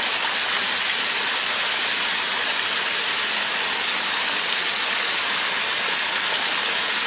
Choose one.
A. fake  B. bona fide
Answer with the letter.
B